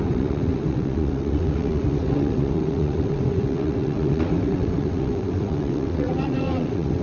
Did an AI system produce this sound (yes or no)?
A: yes